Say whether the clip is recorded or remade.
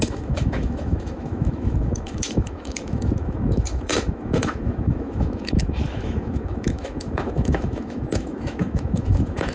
remade